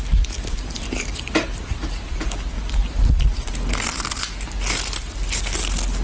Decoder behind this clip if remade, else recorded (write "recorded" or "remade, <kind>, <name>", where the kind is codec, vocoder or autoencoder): recorded